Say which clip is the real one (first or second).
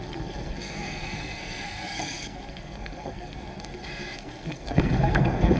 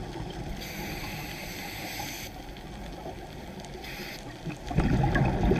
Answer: second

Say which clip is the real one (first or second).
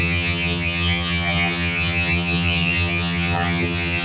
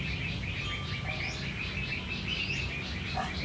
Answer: second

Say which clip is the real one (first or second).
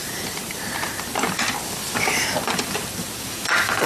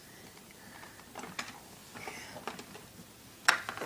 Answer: second